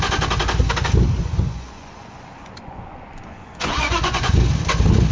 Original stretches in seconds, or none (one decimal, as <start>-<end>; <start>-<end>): 0.0-1.2; 4.3-5.1